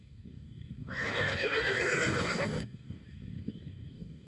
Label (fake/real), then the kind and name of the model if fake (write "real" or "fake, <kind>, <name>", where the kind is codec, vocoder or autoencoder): fake, codec, DAC